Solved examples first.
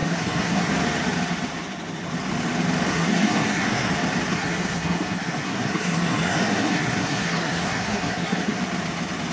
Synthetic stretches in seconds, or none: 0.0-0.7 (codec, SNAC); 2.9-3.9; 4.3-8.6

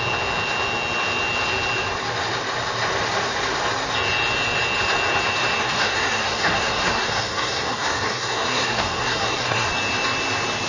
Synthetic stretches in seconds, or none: 5.6-9.7 (codec, SNAC)

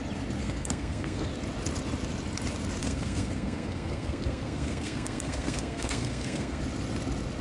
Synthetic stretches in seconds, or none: 0.4-1.3 (codec, SNAC); 2.8-6.6

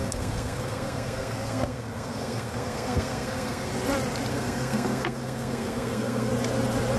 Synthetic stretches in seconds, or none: 0.0-3.7 (codec, SNAC); 4.3-6.3

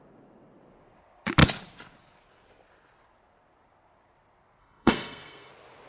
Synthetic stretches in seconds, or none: 4.6-5.5 (codec, SNAC)

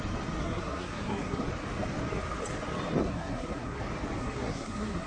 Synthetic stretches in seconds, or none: 0.4-1.4 (codec, SNAC); 3.0-3.8; 4.2-5.1

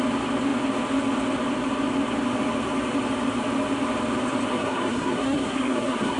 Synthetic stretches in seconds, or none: 4.5-6.2 (codec, SNAC)